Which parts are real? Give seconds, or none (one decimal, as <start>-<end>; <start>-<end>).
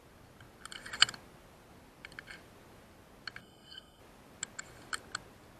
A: 0.0-3.4; 4.0-5.6